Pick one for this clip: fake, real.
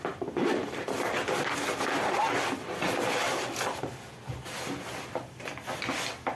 real